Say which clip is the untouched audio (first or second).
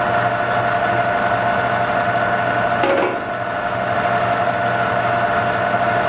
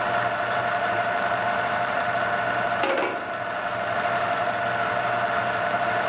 first